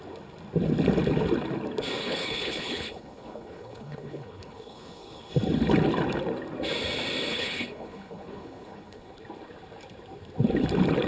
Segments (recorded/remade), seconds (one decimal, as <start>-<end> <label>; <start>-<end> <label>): 0.0-2.0 recorded; 2.0-5.3 remade; 5.3-7.3 recorded; 7.3-9.2 remade; 9.2-11.1 recorded